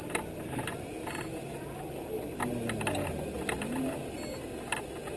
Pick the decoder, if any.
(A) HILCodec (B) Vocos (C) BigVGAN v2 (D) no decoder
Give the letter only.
D